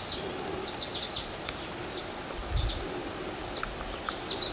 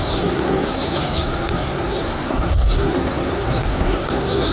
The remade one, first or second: second